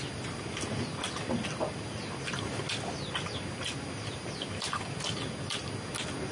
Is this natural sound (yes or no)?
yes